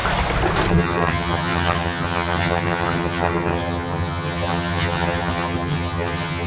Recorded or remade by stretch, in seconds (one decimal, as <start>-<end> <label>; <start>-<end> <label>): 0.0-0.7 recorded; 0.7-6.5 remade